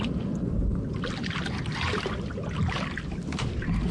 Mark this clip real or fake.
real